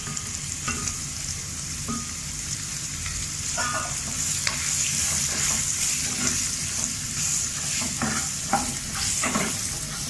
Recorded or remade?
remade